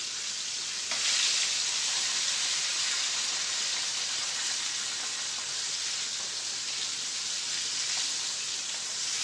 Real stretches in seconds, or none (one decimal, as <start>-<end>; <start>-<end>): 0.0-9.2